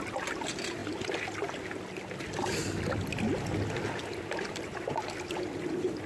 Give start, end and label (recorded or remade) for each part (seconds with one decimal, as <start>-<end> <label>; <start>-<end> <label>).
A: 0.0-6.1 recorded